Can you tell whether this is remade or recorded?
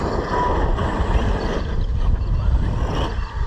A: recorded